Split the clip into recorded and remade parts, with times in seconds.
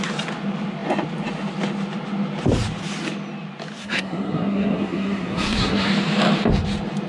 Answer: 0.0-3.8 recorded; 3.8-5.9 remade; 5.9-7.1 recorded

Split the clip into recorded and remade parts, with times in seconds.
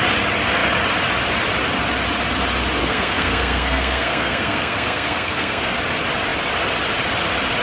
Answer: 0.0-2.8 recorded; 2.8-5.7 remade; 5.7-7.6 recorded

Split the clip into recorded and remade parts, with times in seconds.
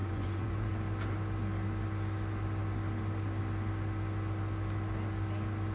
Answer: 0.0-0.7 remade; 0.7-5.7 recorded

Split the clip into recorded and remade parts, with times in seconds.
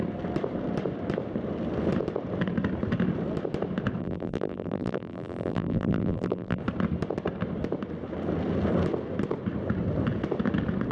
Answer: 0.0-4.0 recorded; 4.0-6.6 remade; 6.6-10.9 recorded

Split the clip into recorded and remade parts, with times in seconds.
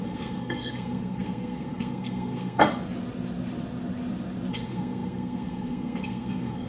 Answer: 0.0-2.6 remade; 2.6-4.5 recorded; 4.5-6.7 remade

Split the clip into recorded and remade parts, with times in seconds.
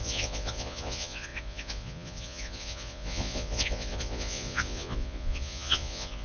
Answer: 0.0-6.2 remade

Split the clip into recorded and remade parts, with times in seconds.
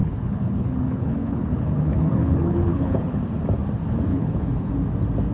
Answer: 0.0-3.2 remade; 3.2-4.1 recorded; 4.1-4.7 remade; 4.7-5.3 recorded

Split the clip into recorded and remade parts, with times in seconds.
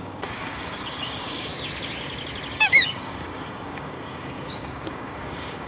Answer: 0.0-1.5 remade; 1.5-2.5 recorded; 2.5-5.7 remade